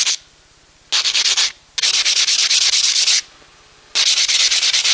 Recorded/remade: recorded